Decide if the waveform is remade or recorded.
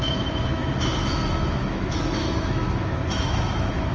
remade